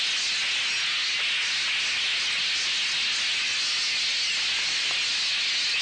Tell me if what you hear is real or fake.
real